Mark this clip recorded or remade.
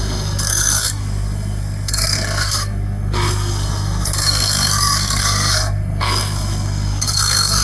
remade